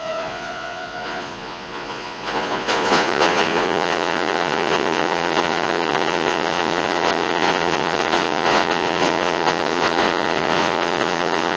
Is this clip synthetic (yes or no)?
yes